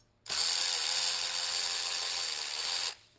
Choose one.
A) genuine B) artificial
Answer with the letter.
A